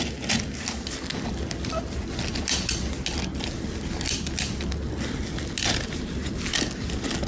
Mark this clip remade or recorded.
recorded